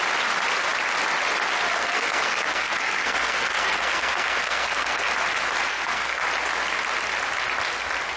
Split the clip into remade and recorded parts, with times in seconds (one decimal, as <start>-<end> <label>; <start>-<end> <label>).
0.0-1.8 recorded; 1.8-5.1 remade; 5.1-5.7 recorded; 5.7-6.2 remade; 6.2-8.2 recorded